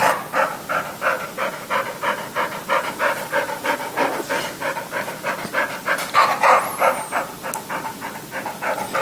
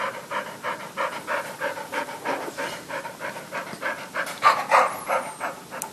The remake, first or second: second